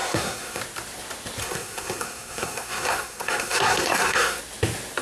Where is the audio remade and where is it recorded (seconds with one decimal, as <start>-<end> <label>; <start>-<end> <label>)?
0.0-0.6 remade; 0.6-1.4 recorded; 1.4-4.4 remade; 4.4-5.0 recorded